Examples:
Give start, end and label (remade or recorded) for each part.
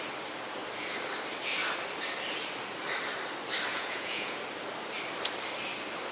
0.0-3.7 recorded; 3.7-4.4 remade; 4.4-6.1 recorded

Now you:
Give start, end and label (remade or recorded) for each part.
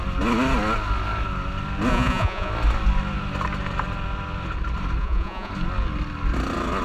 0.0-1.9 recorded; 1.9-2.5 remade; 2.5-5.0 recorded; 5.0-5.5 remade; 5.5-6.8 recorded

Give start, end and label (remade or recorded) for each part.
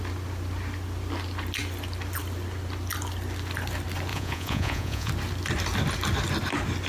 0.0-4.1 recorded; 4.1-5.1 remade; 5.1-6.9 recorded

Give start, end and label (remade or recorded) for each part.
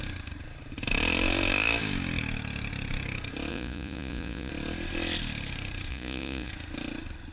0.0-3.5 recorded; 3.5-4.5 remade; 4.5-5.9 recorded; 5.9-6.5 remade; 6.5-7.3 recorded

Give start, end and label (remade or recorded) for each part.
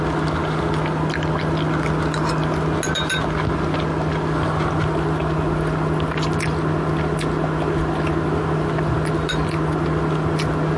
0.0-10.8 recorded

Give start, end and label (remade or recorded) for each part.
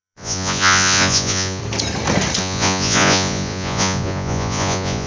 0.0-1.6 remade; 1.6-2.4 recorded; 2.4-5.1 remade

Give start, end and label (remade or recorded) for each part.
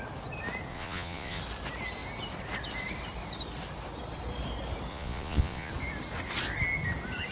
0.0-0.7 recorded; 0.7-1.4 remade; 1.4-4.9 recorded; 4.9-5.7 remade; 5.7-7.3 recorded